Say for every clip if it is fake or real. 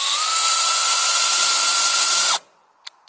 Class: fake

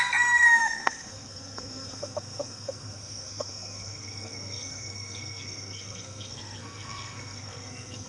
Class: fake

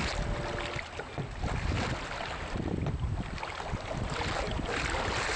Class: real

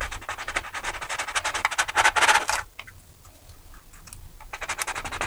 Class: real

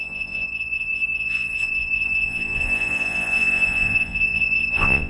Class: fake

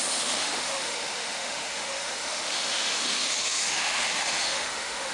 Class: fake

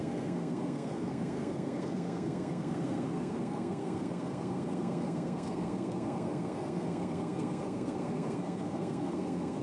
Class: fake